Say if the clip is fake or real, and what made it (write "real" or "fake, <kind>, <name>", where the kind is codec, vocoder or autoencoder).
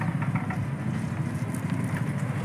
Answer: real